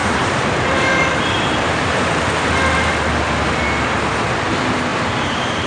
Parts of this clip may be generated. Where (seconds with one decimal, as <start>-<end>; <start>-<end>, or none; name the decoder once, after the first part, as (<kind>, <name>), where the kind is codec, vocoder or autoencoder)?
0.0-2.0 (vocoder, BigVGAN v2); 4.9-5.7